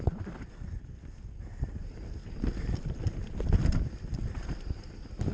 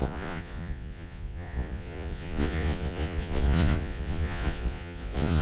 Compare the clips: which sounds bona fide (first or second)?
first